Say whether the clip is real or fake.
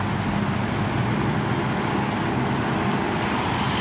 real